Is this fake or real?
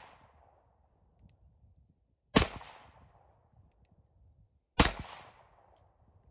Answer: real